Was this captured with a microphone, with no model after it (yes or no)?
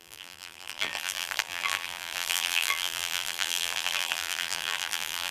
no